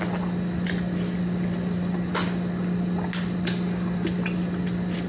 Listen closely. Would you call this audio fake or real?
real